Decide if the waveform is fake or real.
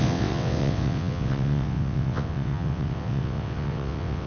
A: fake